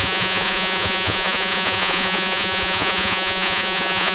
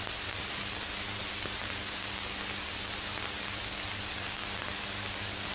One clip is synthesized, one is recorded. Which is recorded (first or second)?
second